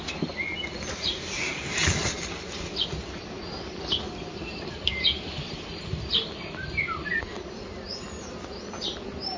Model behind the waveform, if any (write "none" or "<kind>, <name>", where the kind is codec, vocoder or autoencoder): none